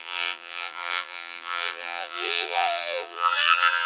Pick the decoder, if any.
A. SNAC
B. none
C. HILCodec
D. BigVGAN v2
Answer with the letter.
D